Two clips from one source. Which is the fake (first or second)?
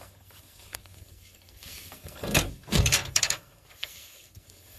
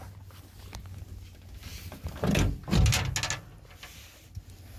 first